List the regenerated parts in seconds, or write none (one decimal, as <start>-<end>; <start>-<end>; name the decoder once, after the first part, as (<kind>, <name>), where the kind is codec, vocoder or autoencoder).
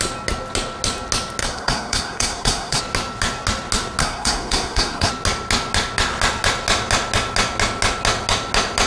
1.4-2.8 (codec, SNAC); 4.0-5.1